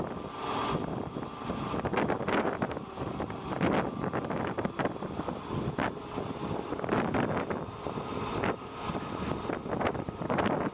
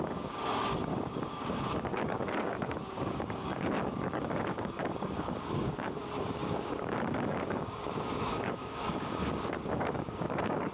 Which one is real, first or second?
first